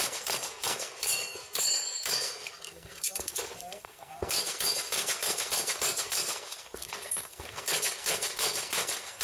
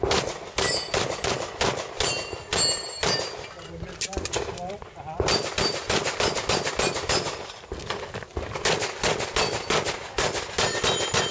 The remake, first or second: first